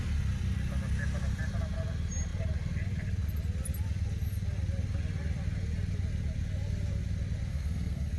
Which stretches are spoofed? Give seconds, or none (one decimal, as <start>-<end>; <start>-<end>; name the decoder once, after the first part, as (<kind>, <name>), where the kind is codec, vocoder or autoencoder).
7.5-8.2 (codec, SNAC)